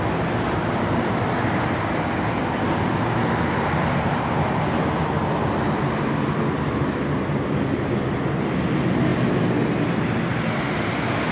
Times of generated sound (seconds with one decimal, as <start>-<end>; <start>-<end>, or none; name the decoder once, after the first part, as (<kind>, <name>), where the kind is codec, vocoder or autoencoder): none